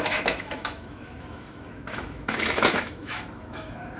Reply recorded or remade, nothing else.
remade